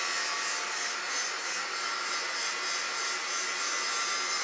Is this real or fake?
real